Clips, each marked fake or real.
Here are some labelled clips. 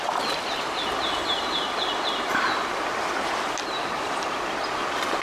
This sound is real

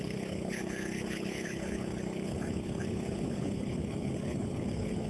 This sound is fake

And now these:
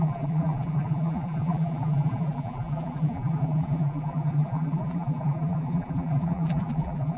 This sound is fake